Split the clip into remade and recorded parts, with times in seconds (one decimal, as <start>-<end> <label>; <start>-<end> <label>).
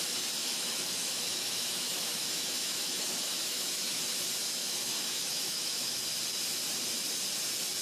0.0-0.4 recorded; 0.4-4.0 remade; 4.0-4.6 recorded; 4.6-6.0 remade; 6.0-7.8 recorded